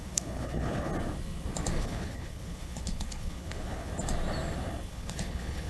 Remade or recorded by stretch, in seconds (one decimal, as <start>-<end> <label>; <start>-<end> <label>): 0.0-0.9 remade; 0.9-1.8 recorded; 1.8-3.9 remade; 3.9-4.9 recorded; 4.9-5.7 remade